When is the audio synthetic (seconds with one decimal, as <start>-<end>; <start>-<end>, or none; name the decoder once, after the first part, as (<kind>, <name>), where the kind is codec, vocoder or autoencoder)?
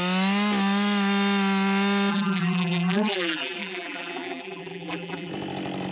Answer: 2.1-5.3 (vocoder, BigVGAN v2)